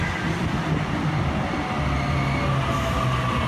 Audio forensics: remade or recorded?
recorded